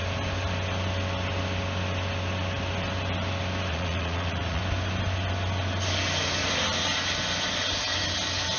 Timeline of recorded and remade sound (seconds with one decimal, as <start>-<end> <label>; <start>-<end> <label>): 0.0-3.7 recorded; 3.7-4.6 remade; 4.6-8.6 recorded